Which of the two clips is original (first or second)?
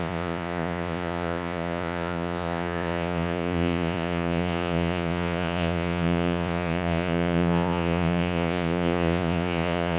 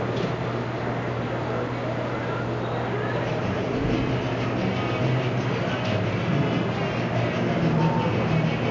second